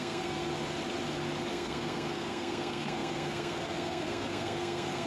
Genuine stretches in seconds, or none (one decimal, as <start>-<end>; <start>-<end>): 0.5-1.5